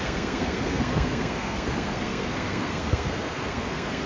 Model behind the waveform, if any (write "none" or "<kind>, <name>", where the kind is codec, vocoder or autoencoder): codec, SNAC